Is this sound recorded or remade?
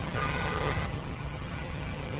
remade